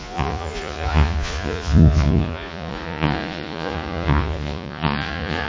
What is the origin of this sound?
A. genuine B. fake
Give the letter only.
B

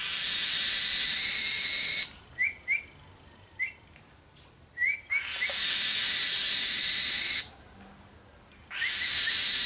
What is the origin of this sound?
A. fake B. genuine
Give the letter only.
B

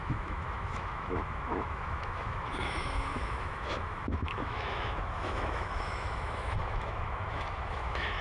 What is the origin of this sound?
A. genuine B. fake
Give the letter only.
B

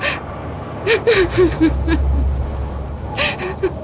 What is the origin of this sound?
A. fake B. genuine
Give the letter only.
B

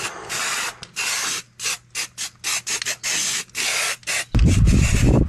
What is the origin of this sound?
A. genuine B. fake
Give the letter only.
A